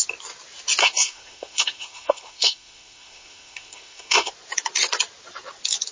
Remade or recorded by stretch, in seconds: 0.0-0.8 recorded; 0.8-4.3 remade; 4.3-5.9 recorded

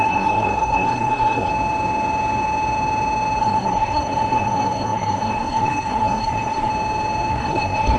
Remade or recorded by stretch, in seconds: 0.0-1.5 remade; 1.5-3.4 recorded; 3.4-6.7 remade; 6.7-7.3 recorded; 7.3-8.0 remade

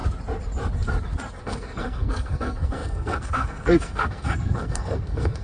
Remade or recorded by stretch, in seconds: 0.0-1.4 recorded; 1.4-5.4 remade

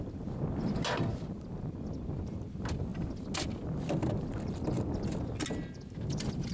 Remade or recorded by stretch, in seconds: 0.0-6.5 recorded

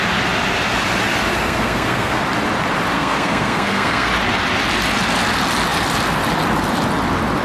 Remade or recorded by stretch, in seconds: 0.0-1.3 recorded; 1.3-2.2 remade; 2.2-2.9 recorded; 2.9-4.1 remade; 4.1-7.4 recorded

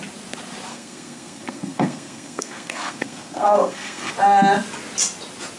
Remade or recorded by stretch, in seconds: 0.0-0.7 recorded; 0.7-4.1 remade; 4.1-5.6 recorded

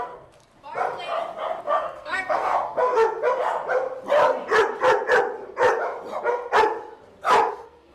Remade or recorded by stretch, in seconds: 0.0-0.5 remade; 0.5-1.6 recorded; 1.6-2.9 remade; 2.9-7.5 recorded; 7.5-7.9 remade

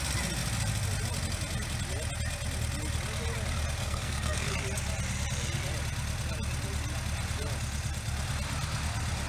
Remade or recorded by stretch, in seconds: 0.0-3.8 recorded; 3.8-4.5 remade; 4.5-9.3 recorded